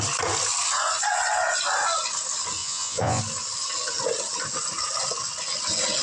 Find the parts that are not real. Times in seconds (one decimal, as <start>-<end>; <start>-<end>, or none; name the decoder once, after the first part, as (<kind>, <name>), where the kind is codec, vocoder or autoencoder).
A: 2.6-3.2 (vocoder, Vocos)